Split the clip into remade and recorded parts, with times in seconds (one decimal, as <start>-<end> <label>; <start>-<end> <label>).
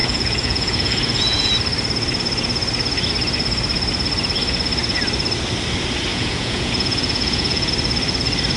0.0-1.5 remade; 1.5-6.1 recorded; 6.1-7.7 remade; 7.7-8.6 recorded